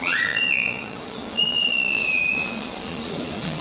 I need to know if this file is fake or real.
fake